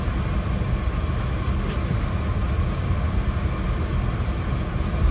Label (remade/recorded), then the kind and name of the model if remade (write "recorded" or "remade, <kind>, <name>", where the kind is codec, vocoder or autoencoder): recorded